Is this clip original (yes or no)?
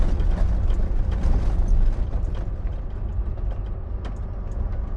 yes